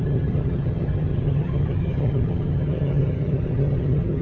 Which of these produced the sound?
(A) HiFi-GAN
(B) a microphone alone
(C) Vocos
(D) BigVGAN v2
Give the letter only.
A